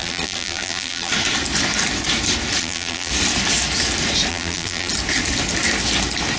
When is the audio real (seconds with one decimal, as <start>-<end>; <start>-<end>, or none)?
1.1-2.6; 3.1-4.3; 4.9-6.4